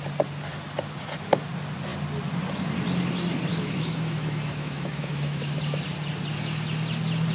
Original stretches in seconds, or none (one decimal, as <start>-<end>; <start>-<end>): 0.0-3.5; 5.6-7.3